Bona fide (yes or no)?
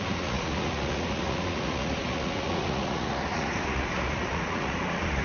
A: no